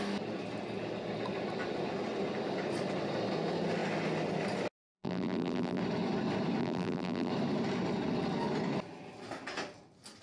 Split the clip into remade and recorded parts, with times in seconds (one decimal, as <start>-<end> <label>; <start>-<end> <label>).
0.0-4.8 recorded; 4.8-5.8 remade; 5.8-6.6 recorded; 6.6-7.3 remade; 7.3-10.2 recorded